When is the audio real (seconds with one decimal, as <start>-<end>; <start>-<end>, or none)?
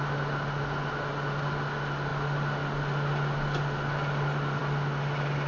0.0-5.5